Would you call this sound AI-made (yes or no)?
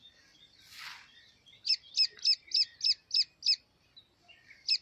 no